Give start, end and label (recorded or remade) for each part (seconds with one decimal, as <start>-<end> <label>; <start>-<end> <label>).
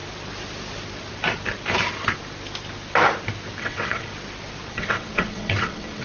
0.0-3.6 recorded; 3.6-4.1 remade; 4.1-4.7 recorded; 4.7-6.0 remade